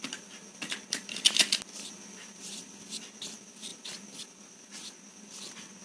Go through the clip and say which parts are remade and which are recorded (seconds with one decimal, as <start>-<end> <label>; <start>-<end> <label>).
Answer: 0.0-5.8 recorded